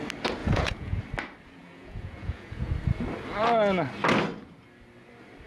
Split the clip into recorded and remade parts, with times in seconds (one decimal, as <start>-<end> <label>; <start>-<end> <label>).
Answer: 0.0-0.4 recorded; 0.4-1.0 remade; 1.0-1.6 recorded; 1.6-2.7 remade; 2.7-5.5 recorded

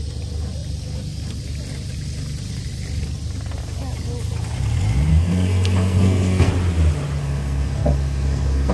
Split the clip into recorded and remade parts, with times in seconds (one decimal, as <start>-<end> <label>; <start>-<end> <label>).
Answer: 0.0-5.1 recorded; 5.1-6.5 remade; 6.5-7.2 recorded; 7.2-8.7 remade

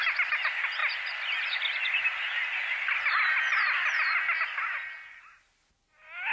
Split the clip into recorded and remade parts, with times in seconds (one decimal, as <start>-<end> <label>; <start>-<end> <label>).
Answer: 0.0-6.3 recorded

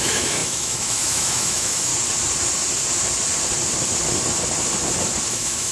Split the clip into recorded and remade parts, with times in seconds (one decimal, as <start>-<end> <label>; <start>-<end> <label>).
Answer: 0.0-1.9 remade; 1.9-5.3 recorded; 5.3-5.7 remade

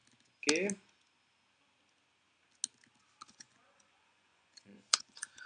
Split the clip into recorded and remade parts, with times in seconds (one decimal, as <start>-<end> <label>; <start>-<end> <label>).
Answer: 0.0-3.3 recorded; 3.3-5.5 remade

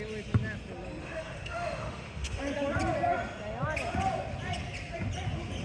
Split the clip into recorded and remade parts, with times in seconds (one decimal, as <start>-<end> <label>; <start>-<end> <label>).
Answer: 0.0-1.0 recorded; 1.0-2.4 remade; 2.4-5.6 recorded

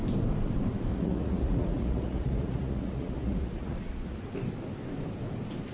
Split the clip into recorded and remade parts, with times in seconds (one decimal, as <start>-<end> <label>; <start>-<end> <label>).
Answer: 0.0-0.9 recorded; 0.9-4.3 remade; 4.3-5.7 recorded